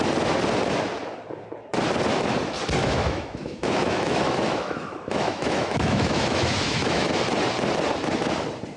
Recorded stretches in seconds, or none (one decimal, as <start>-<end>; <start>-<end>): 0.0-2.8; 7.2-8.8